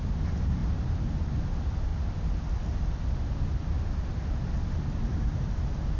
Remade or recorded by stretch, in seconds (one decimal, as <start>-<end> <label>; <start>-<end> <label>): 0.0-6.0 recorded